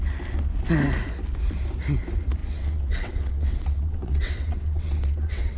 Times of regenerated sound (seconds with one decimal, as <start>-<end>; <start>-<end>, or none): 2.4-5.6